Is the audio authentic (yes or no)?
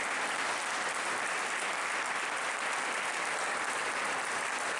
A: yes